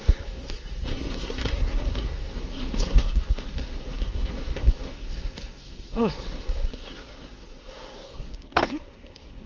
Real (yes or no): no